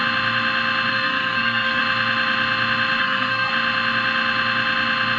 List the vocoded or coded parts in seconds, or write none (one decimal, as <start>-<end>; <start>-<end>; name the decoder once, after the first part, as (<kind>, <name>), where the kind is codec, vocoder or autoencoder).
0.9-1.8 (codec, SNAC); 3.0-3.5